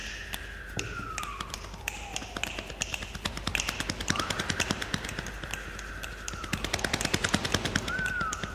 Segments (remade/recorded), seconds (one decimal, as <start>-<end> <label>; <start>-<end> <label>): 0.0-8.5 recorded